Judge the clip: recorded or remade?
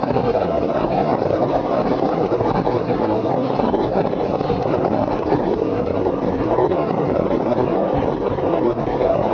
remade